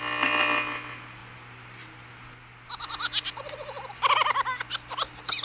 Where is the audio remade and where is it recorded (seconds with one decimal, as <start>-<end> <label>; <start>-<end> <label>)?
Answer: 0.0-5.4 recorded